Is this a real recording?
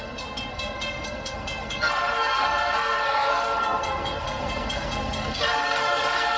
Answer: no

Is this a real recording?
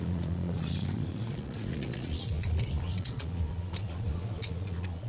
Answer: no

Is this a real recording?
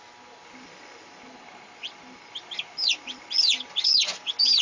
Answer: yes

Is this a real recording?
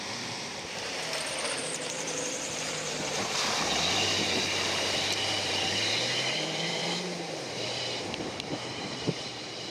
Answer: no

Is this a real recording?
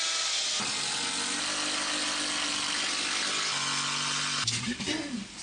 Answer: yes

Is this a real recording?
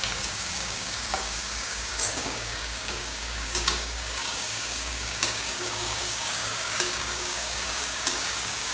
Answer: no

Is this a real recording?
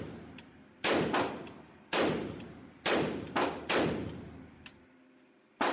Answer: no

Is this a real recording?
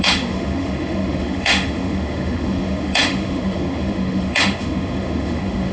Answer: no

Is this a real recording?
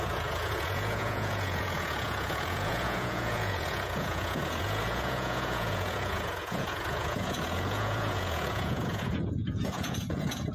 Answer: no